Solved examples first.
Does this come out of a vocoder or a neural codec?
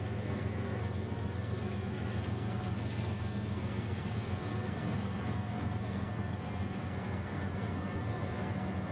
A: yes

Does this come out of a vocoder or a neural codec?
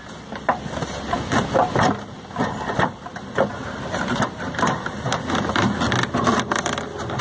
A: no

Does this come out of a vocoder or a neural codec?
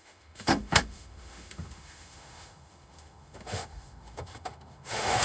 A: yes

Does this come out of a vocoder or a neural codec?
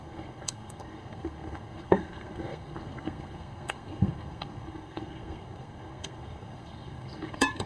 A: yes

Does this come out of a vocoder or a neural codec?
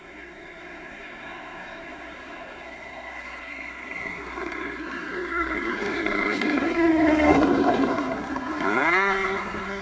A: yes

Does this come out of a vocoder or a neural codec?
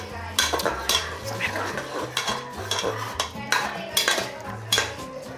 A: no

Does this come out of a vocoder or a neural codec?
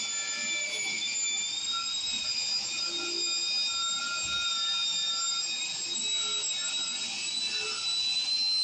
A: no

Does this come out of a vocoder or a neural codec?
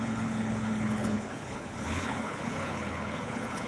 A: yes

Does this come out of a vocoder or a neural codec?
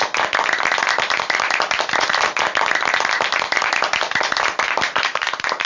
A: yes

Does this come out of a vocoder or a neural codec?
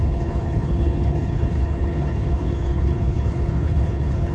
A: yes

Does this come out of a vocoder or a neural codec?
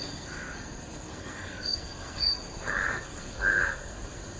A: yes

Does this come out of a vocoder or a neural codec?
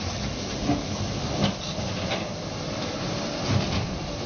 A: no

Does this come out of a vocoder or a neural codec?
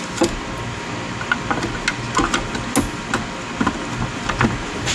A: no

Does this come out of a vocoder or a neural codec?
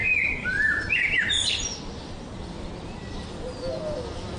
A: no